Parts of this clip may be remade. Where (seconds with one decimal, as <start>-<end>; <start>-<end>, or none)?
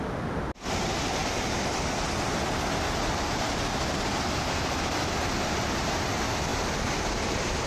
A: none